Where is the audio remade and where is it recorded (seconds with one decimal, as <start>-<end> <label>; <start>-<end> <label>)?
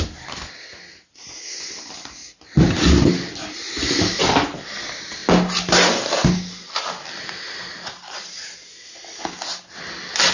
0.0-10.3 recorded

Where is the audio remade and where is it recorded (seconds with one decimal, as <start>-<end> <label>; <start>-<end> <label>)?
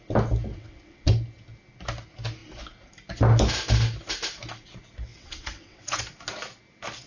0.0-0.5 recorded; 0.5-1.1 remade; 1.1-5.1 recorded; 5.1-6.0 remade; 6.0-7.1 recorded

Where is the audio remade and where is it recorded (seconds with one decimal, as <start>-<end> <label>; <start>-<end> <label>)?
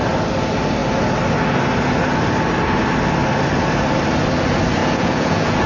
0.0-4.8 recorded; 4.8-5.7 remade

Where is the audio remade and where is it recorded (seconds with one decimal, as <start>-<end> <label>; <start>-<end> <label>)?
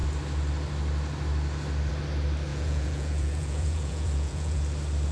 0.0-2.5 recorded; 2.5-4.6 remade; 4.6-5.1 recorded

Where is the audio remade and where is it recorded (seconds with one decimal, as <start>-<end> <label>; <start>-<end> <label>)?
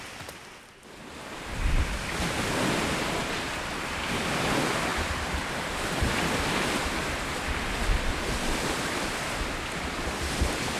0.0-4.9 recorded; 4.9-6.2 remade; 6.2-10.8 recorded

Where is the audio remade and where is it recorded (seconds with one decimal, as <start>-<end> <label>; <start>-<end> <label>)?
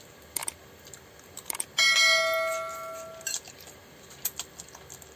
0.0-5.2 recorded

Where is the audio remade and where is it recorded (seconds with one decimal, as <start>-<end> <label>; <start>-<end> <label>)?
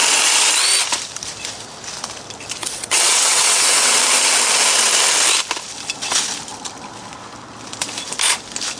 0.0-2.6 recorded; 2.6-4.0 remade; 4.0-8.8 recorded